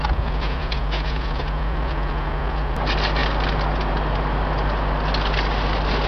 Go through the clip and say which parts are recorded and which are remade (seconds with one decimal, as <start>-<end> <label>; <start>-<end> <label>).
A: 0.0-6.1 recorded